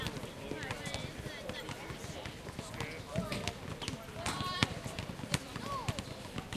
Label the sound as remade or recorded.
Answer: recorded